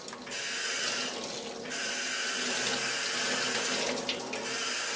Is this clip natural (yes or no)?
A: yes